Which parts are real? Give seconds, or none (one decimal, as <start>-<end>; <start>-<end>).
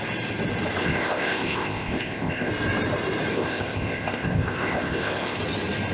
0.0-0.8; 2.5-3.3; 5.4-5.9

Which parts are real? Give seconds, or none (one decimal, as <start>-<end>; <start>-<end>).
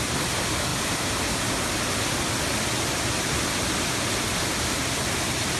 0.0-5.6